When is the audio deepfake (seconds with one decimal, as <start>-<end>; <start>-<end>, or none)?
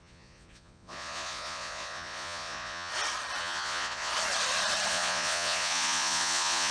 0.0-2.9; 3.4-4.1; 4.9-6.7